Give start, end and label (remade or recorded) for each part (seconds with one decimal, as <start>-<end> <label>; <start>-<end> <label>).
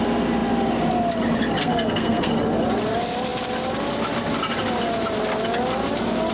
0.0-1.6 recorded; 1.6-2.3 remade; 2.3-6.3 recorded